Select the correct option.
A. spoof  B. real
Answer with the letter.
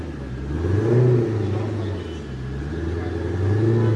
B